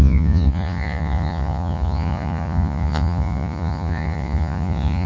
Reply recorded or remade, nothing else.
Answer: remade